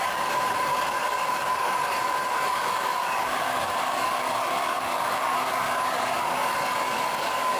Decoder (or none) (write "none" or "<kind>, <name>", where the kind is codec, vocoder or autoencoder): codec, DAC